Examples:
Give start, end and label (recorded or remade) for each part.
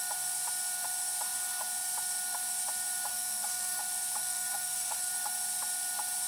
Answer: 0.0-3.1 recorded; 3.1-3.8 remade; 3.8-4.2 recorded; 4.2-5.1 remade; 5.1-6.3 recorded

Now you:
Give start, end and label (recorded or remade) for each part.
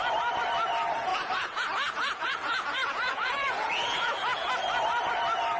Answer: 0.0-1.1 recorded; 1.1-4.5 remade; 4.5-5.6 recorded